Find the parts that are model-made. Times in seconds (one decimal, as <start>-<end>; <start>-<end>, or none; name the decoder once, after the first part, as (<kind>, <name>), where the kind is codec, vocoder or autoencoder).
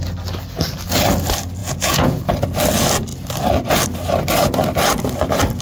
1.6-2.2 (vocoder, Vocos)